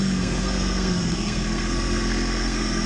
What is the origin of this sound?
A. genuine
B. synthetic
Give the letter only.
B